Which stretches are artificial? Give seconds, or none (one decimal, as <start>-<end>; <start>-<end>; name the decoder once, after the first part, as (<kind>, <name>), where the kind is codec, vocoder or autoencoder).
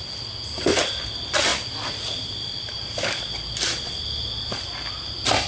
none